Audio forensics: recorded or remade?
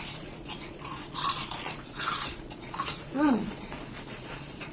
remade